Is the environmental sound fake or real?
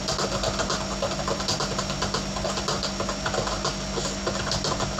real